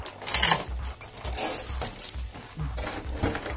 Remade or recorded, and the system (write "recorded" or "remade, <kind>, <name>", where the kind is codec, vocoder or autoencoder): recorded